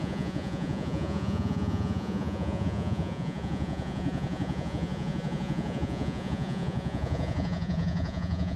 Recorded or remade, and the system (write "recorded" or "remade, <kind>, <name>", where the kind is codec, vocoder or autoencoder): remade, vocoder, Vocos